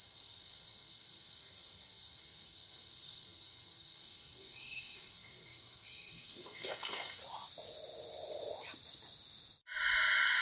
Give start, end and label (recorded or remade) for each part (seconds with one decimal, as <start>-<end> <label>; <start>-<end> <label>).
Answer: 0.0-7.2 remade; 7.2-10.4 recorded